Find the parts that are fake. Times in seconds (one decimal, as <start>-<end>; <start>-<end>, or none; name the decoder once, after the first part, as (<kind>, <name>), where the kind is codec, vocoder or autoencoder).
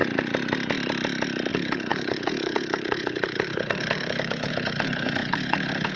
1.5-6.0 (codec, HILCodec)